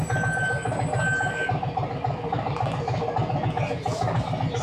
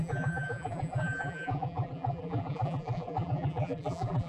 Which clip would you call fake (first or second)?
second